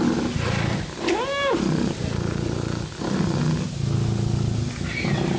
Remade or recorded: recorded